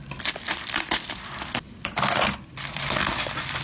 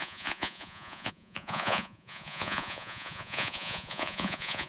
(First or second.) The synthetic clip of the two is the second